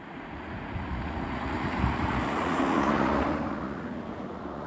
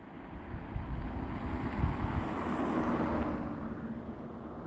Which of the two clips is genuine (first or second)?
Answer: second